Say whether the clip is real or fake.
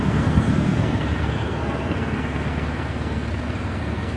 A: fake